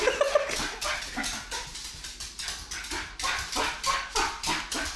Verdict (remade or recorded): recorded